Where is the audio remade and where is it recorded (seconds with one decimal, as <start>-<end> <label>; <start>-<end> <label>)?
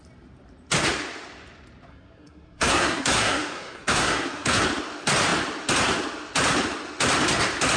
0.0-1.9 recorded; 1.9-4.6 remade; 4.6-7.8 recorded